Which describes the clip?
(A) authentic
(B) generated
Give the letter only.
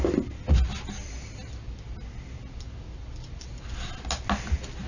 A